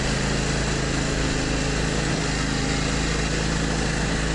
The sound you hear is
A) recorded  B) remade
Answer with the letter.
A